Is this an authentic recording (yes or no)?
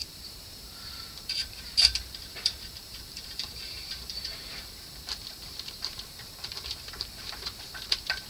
no